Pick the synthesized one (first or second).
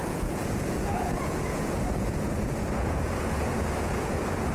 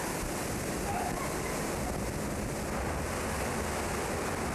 first